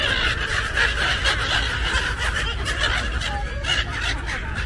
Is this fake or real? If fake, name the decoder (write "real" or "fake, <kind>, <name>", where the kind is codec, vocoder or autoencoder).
real